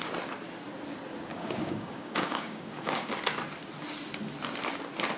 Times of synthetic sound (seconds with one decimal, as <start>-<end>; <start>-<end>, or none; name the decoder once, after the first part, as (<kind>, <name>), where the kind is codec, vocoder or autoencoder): 1.3-3.1 (codec, DAC)